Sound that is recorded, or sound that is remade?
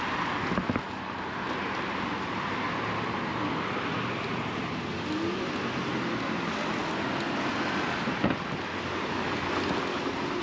recorded